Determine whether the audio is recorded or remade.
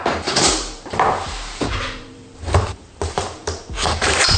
remade